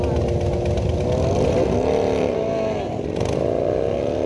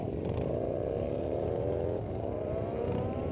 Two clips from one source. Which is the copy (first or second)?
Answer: second